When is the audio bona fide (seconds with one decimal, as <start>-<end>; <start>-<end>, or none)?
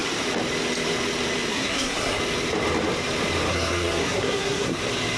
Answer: 0.0-1.5; 2.2-3.5; 4.8-5.2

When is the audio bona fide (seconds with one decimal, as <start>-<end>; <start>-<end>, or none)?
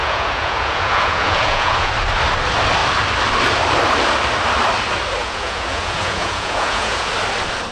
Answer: 1.9-5.2; 7.1-7.7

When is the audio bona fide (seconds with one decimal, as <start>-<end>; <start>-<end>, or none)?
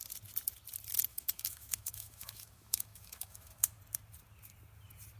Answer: 0.0-1.1; 3.8-5.2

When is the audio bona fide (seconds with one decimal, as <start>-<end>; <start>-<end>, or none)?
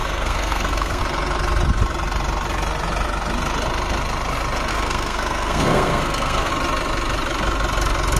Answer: 1.0-4.7; 6.5-8.2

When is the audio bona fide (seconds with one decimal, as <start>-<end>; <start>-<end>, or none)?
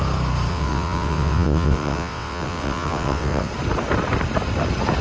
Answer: 0.0-0.5; 3.5-5.0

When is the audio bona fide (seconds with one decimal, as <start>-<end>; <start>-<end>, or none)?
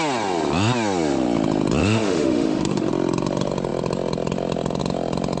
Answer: 0.0-1.8; 2.9-5.4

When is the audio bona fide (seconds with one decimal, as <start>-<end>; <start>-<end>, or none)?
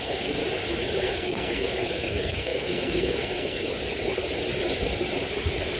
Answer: 0.4-1.0; 3.7-5.8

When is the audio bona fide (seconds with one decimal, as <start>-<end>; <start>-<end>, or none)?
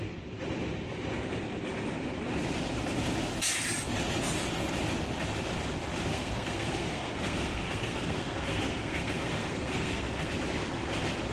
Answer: 0.0-6.1; 10.3-11.3